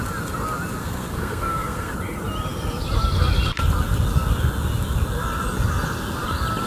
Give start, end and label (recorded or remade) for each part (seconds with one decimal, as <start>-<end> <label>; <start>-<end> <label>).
0.0-0.8 recorded; 0.8-1.9 remade; 1.9-6.7 recorded